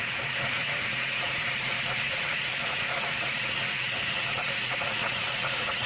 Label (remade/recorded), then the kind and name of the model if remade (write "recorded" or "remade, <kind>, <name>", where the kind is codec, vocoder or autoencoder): remade, vocoder, Vocos